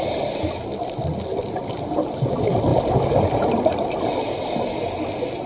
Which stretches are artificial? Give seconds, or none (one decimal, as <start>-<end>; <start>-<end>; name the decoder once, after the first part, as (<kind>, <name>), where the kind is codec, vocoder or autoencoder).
none